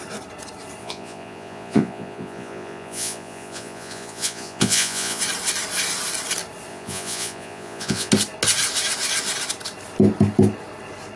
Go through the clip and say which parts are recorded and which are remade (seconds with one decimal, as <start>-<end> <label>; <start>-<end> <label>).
0.0-0.8 recorded; 0.8-5.2 remade; 5.2-6.7 recorded; 6.7-8.1 remade; 8.1-11.2 recorded